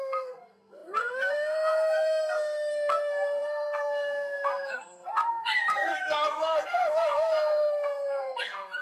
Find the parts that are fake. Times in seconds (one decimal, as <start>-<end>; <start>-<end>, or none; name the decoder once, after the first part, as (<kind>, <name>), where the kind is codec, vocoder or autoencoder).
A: 0.0-8.8 (codec, SNAC)